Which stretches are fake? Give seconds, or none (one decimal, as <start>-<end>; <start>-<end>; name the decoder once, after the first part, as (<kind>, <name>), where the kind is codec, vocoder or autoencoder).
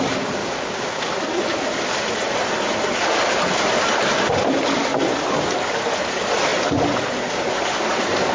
0.4-1.0 (codec, DAC)